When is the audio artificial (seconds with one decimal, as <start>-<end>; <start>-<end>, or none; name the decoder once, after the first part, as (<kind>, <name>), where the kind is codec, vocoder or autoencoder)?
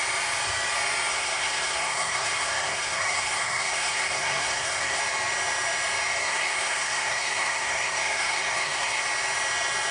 1.1-5.0 (codec, SNAC); 6.2-9.0